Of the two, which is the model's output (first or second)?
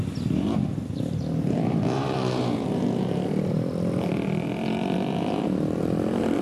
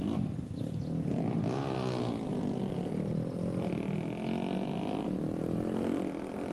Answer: first